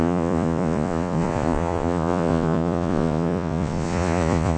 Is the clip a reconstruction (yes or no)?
yes